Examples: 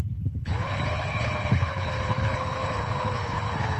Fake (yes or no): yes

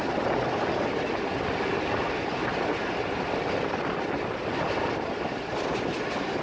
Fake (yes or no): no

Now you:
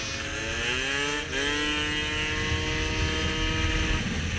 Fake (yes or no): no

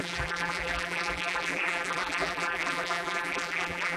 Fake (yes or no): yes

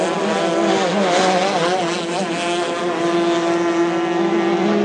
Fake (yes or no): no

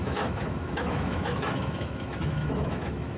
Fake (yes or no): yes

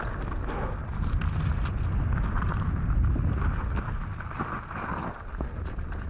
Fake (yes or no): no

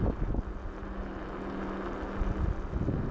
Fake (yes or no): no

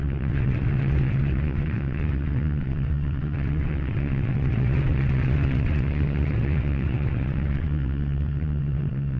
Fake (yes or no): yes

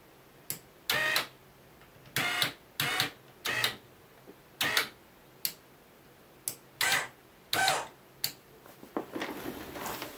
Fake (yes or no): no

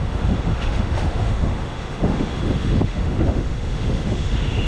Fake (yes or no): yes